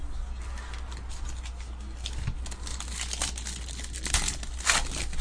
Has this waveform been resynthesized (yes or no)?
no